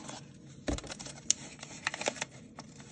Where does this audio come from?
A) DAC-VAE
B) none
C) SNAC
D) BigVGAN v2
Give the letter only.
D